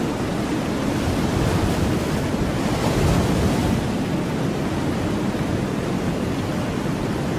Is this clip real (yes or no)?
yes